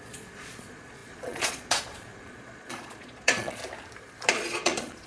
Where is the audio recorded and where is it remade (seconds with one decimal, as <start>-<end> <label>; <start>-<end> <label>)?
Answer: 0.0-3.6 remade; 3.6-4.3 recorded; 4.3-5.1 remade